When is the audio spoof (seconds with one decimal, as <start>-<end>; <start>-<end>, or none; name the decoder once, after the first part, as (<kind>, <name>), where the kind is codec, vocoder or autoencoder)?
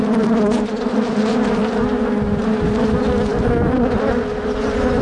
none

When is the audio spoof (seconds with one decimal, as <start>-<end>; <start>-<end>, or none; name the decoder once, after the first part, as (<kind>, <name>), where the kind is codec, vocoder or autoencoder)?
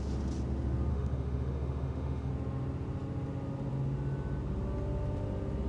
0.9-2.3 (autoencoder, DAC-VAE)